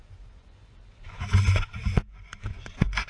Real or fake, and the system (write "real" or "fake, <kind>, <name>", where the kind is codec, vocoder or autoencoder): fake, vocoder, Vocos